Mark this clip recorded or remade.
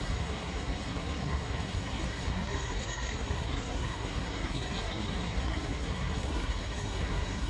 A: remade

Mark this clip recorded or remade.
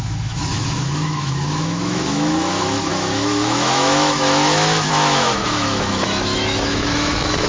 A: remade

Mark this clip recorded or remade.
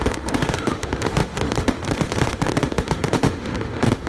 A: remade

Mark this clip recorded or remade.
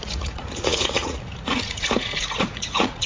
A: remade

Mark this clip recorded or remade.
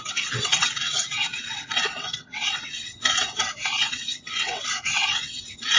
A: remade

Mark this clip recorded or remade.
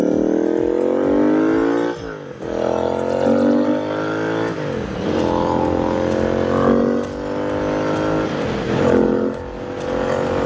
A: recorded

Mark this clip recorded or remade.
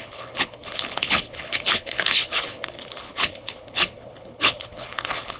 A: remade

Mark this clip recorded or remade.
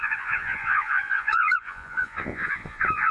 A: remade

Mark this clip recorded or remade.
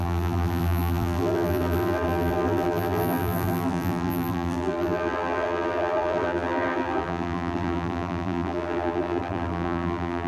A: remade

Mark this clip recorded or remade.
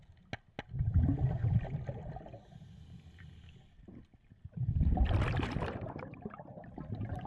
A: recorded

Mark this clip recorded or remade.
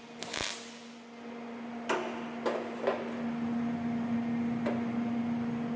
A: recorded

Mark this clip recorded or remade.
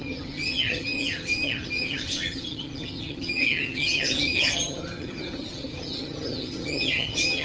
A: remade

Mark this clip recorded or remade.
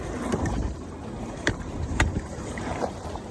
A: remade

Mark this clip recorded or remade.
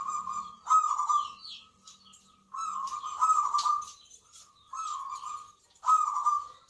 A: recorded